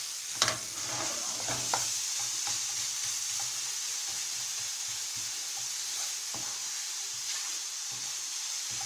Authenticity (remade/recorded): recorded